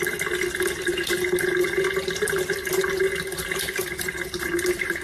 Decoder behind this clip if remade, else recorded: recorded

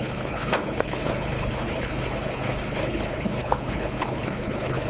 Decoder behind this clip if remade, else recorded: remade, codec, HILCodec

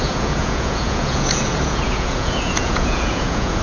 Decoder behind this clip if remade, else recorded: remade, vocoder, Vocos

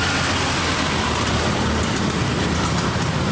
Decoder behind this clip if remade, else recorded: recorded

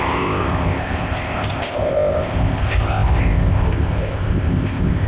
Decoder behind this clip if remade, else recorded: remade, codec, ZipCodec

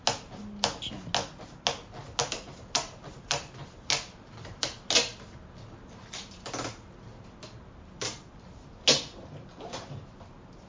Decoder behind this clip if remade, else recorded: recorded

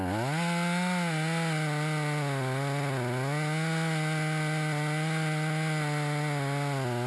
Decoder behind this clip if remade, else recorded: recorded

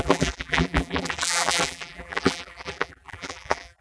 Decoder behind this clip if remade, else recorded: remade, vocoder, BigVGAN v2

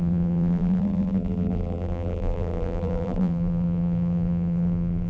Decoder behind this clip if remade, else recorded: remade, vocoder, BigVGAN v2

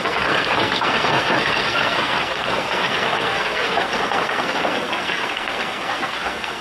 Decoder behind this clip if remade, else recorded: remade, codec, SNAC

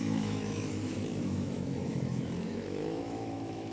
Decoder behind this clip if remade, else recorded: remade, autoencoder, DAC-VAE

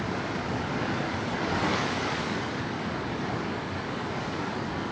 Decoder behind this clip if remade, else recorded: remade, codec, DAC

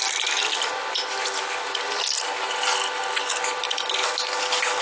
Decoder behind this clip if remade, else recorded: recorded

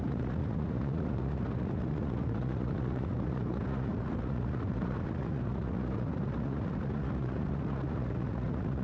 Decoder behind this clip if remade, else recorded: remade, vocoder, Vocos